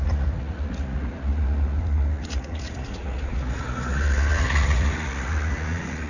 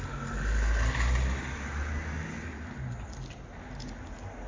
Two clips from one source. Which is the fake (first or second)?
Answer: first